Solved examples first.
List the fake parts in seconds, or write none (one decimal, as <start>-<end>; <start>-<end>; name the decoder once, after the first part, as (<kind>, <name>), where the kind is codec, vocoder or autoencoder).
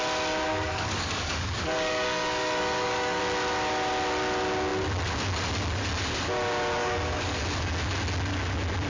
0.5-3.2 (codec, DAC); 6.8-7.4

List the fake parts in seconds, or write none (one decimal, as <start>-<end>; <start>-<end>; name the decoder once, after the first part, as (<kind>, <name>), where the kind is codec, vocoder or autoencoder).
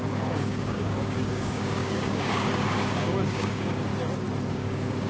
0.0-3.9 (codec, DAC); 4.5-5.1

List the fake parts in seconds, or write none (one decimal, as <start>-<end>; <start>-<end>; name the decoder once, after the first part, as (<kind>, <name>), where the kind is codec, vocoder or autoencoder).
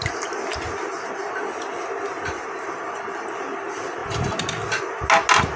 none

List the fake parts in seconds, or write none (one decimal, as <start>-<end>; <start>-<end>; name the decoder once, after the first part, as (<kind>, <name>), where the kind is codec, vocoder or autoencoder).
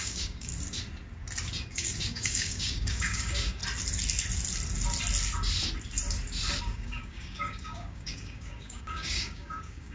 0.0-0.5 (codec, DAC); 1.7-3.6; 6.6-9.9